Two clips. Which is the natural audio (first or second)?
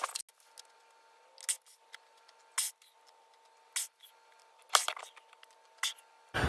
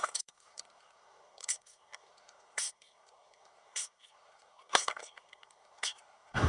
first